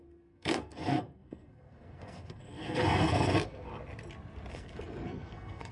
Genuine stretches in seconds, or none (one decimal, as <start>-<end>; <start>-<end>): 3.7-4.5